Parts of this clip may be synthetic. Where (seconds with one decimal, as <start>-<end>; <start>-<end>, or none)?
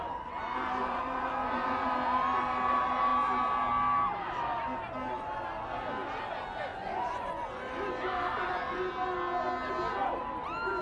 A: 0.8-1.9; 6.7-7.7